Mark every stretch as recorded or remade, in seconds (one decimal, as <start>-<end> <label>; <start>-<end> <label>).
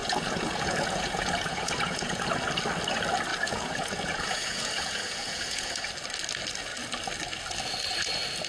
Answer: 0.0-2.4 remade; 2.4-3.3 recorded; 3.3-5.9 remade; 5.9-8.5 recorded